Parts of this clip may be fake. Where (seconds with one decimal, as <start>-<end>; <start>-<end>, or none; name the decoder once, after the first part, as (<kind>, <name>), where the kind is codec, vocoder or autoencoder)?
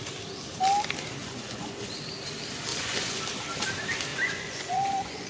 1.2-1.9 (vocoder, Vocos); 2.7-3.2; 4.1-5.3